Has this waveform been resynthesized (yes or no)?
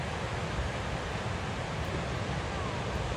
no